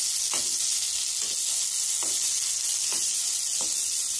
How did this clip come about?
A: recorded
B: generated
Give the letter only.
A